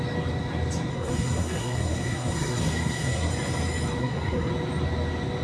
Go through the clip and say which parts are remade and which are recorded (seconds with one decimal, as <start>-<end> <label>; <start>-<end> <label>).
0.0-0.9 recorded; 0.9-3.3 remade; 3.3-4.0 recorded; 4.0-4.5 remade; 4.5-5.4 recorded